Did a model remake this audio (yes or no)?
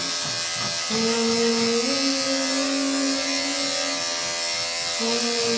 no